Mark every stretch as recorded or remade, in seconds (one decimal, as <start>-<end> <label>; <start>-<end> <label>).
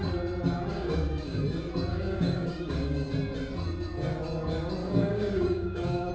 0.0-0.7 recorded; 0.7-1.4 remade; 1.4-1.9 recorded; 1.9-3.1 remade; 3.1-4.8 recorded; 4.8-6.1 remade